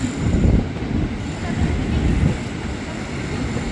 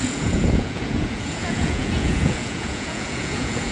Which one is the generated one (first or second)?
second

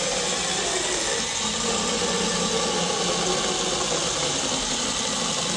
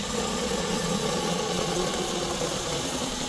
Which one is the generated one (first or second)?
second